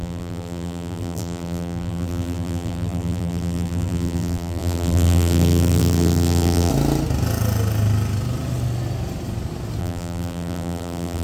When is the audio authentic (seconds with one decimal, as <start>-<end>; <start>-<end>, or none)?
6.7-9.8